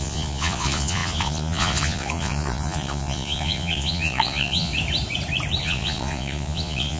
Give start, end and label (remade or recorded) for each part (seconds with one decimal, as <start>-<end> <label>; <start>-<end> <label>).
0.0-4.7 remade; 4.7-5.6 recorded; 5.6-7.0 remade